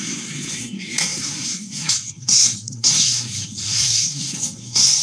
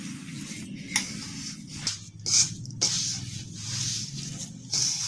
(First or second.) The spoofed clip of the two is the first